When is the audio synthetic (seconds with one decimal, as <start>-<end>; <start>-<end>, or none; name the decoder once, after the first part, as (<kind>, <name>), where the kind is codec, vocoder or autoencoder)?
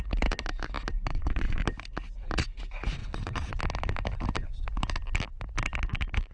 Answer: 1.1-1.6 (vocoder, WaveNeXt); 3.0-3.6